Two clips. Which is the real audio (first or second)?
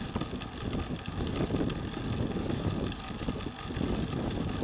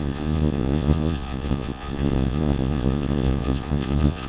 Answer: first